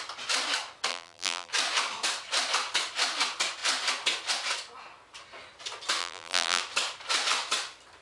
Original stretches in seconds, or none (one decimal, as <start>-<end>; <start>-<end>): 0.0-0.9; 1.5-6.0; 6.6-8.0